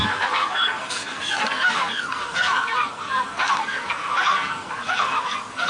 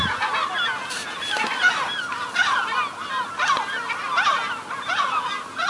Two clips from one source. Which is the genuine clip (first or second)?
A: second